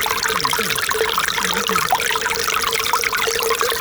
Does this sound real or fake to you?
real